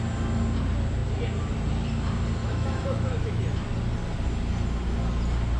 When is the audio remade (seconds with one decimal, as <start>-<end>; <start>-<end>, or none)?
2.4-3.4